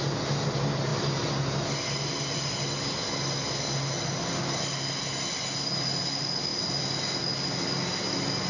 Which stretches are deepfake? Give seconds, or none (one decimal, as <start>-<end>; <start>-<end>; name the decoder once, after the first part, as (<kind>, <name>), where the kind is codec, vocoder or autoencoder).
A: none